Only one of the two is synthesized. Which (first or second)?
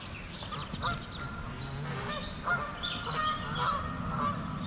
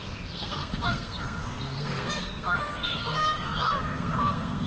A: second